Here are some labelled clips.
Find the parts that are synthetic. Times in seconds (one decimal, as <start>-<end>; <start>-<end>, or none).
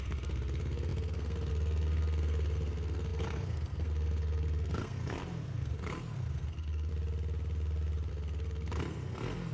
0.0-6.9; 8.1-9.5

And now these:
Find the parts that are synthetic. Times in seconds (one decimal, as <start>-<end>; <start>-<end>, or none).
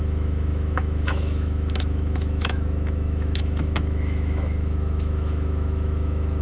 0.0-6.4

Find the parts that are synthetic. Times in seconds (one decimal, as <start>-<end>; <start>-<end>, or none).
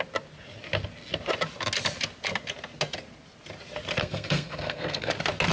4.0-5.1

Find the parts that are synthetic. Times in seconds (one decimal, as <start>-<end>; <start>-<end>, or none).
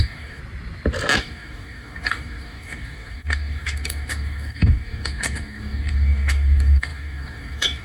0.0-0.4; 1.2-7.8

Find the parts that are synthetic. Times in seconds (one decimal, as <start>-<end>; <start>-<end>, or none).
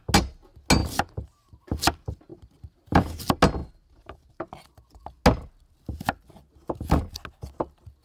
0.8-1.6; 2.3-3.2; 3.6-5.0